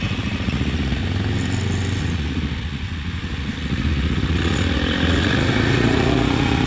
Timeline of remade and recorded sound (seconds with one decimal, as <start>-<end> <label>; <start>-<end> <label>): 0.0-1.0 remade; 1.0-2.0 recorded; 2.0-6.7 remade